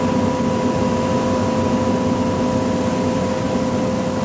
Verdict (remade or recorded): recorded